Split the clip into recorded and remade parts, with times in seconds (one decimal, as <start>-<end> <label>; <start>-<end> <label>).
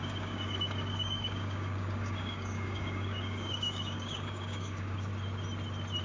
0.0-5.1 remade; 5.1-6.0 recorded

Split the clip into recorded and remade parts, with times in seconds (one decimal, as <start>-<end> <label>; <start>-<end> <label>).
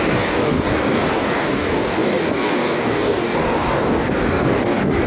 0.0-5.1 remade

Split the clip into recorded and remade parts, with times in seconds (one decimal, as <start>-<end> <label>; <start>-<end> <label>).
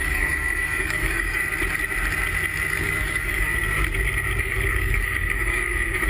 0.0-1.4 remade; 1.4-2.7 recorded; 2.7-3.5 remade; 3.5-4.4 recorded; 4.4-6.1 remade